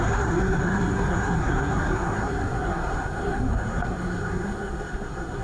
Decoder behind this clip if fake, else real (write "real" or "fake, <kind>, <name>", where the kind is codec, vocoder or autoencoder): fake, codec, SNAC